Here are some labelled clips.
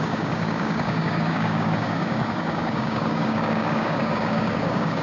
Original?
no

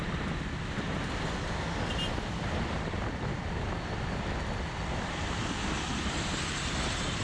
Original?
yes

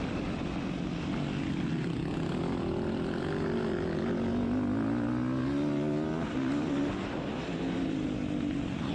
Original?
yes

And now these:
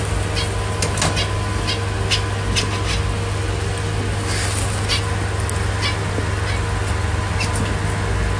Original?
yes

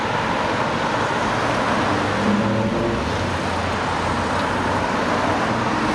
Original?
yes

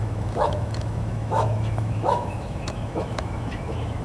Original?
no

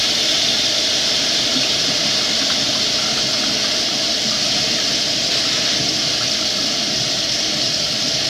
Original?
yes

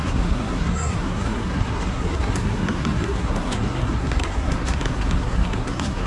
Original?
no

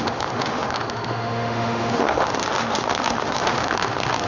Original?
no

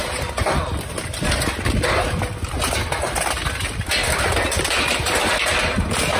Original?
yes